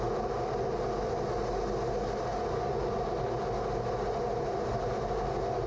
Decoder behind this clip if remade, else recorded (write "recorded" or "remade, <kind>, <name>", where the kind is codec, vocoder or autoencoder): recorded